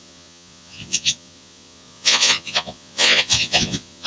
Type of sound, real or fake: fake